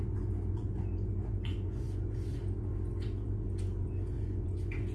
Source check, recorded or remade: remade